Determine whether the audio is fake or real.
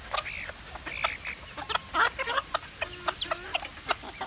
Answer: real